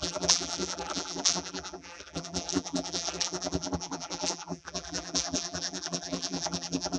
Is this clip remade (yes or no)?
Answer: yes